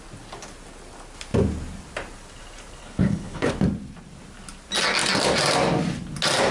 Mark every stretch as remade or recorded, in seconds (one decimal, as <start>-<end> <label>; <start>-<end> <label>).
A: 0.0-2.8 recorded; 2.8-3.5 remade; 3.5-6.5 recorded